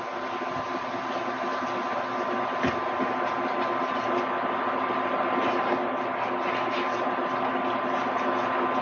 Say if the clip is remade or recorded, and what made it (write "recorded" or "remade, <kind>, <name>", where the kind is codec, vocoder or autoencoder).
recorded